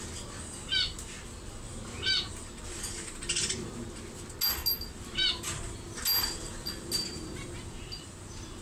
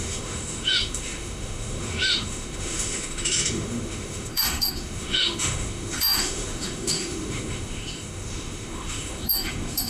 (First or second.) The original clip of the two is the first